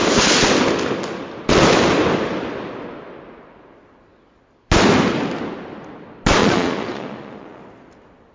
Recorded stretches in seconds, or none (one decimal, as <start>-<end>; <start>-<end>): 0.0-6.4; 7.6-8.3